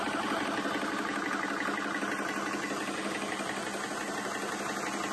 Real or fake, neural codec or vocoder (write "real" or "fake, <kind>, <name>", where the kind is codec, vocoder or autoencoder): real